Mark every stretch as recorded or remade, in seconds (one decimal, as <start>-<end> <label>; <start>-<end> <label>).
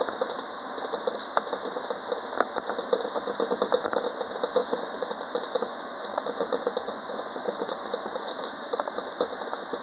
0.0-4.6 recorded; 4.6-9.2 remade; 9.2-9.8 recorded